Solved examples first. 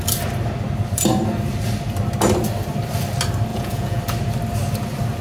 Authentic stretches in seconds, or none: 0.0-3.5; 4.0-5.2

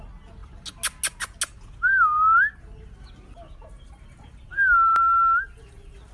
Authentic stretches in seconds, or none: 0.0-6.1

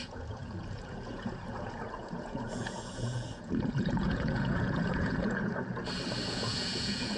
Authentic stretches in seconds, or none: 5.5-6.3

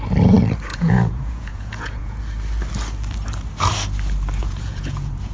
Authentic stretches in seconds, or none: 0.0-0.7; 2.2-4.4

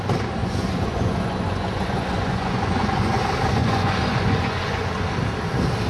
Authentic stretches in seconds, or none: 0.0-0.4; 3.2-3.6; 5.0-5.9

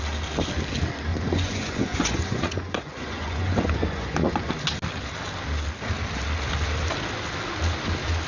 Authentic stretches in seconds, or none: 0.0-1.1; 4.5-8.3